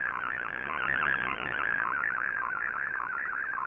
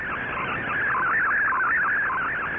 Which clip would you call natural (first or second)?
second